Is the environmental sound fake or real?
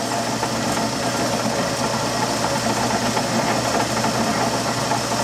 real